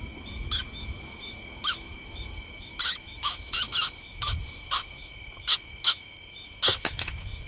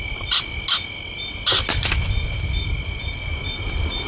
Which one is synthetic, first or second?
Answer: first